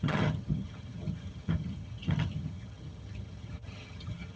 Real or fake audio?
fake